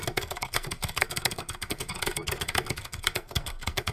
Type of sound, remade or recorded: remade